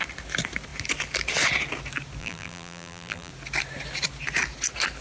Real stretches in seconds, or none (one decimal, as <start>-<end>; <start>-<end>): 0.0-2.2; 3.3-5.0